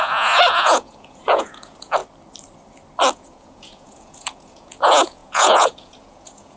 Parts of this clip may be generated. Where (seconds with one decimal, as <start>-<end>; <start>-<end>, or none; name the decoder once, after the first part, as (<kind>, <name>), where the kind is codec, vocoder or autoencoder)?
0.0-2.0 (vocoder, Vocos); 3.1-6.6